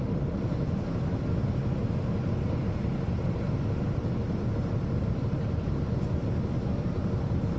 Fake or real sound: real